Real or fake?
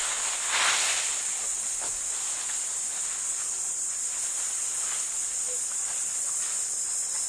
real